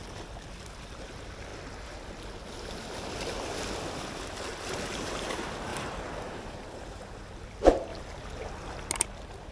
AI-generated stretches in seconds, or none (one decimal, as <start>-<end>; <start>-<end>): 5.7-7.4